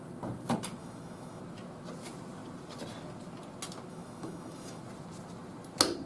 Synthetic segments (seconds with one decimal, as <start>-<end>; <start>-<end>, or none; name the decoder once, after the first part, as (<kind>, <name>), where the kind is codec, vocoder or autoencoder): 0.8-1.4 (autoencoder, DAC-VAE); 3.9-4.8